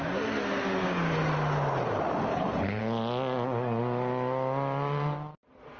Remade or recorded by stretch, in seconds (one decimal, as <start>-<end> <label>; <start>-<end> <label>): 0.0-2.3 recorded; 2.3-2.8 remade; 2.8-5.8 recorded